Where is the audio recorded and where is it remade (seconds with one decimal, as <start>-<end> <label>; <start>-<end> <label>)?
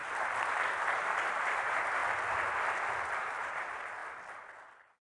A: 0.0-0.8 recorded; 0.8-2.0 remade; 2.0-3.1 recorded; 3.1-4.0 remade; 4.0-5.0 recorded